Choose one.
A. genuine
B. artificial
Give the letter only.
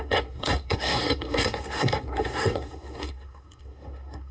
B